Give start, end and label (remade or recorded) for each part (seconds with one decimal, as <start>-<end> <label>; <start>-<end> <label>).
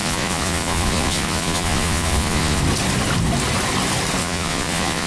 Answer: 0.0-2.6 remade; 2.6-4.2 recorded; 4.2-5.1 remade